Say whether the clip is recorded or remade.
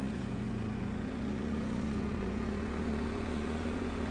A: remade